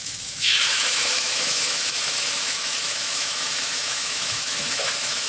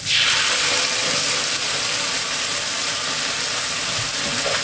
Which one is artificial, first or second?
first